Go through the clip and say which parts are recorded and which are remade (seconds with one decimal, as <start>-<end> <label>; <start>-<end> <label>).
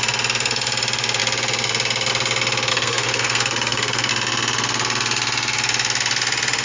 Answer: 0.0-2.7 recorded; 2.7-4.1 remade; 4.1-6.6 recorded